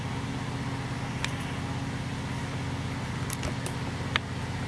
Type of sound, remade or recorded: recorded